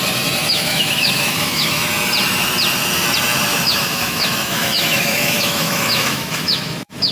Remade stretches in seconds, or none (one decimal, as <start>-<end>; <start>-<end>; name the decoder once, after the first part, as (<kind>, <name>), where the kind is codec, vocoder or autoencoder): 0.4-1.9 (autoencoder, DAC-VAE); 3.5-7.1